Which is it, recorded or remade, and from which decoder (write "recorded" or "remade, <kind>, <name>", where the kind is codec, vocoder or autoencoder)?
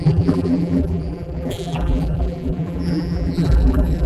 remade, vocoder, BigVGAN v2